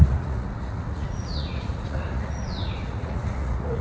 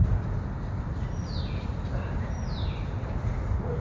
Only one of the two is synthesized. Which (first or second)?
first